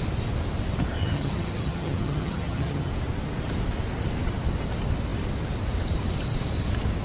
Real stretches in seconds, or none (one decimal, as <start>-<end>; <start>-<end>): 0.0-1.0; 2.9-7.0